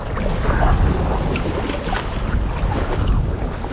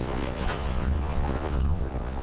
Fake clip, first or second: second